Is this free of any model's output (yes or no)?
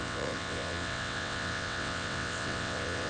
no